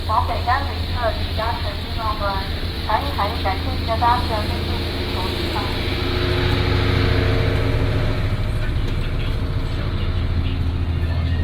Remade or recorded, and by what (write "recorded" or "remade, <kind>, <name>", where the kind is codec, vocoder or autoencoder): recorded